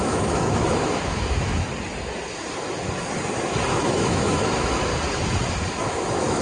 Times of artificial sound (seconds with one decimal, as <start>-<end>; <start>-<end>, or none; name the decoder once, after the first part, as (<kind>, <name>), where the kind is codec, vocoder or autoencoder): 0.0-1.7 (autoencoder, DAC-VAE); 3.7-4.9; 5.8-6.4